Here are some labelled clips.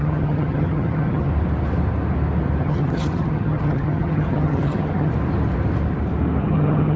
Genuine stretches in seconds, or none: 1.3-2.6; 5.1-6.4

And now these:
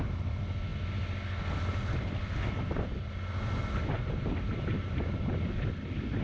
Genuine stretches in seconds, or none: 0.0-6.2